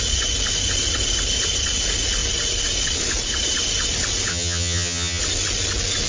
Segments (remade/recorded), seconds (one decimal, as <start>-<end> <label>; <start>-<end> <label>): 0.0-4.3 recorded; 4.3-5.2 remade; 5.2-6.1 recorded